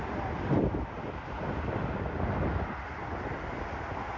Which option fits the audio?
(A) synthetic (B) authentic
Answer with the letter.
B